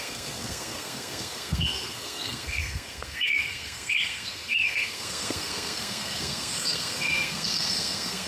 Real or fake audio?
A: fake